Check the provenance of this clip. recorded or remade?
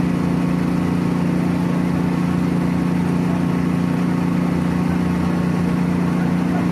recorded